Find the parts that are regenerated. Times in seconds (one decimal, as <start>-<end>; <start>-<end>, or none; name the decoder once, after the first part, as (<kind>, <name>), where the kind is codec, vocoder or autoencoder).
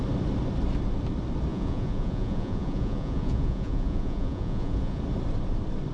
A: 1.5-5.0 (vocoder, Vocos)